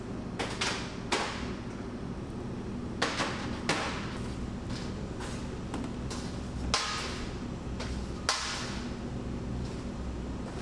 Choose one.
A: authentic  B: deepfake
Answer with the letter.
A